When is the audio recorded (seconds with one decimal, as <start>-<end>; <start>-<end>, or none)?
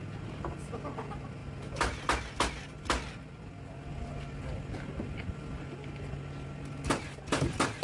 0.0-7.8